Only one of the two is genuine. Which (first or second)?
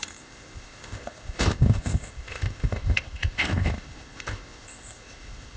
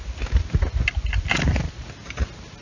second